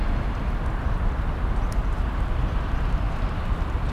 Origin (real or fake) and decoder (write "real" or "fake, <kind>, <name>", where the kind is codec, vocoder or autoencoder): fake, vocoder, BigVGAN v2